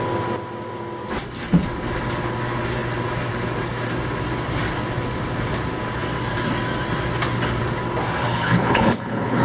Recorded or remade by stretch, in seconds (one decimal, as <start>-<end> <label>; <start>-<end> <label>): 0.0-8.3 recorded; 8.3-9.4 remade